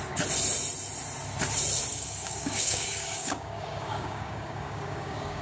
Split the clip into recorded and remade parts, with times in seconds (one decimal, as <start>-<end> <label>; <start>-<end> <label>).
0.0-1.9 recorded; 1.9-5.4 remade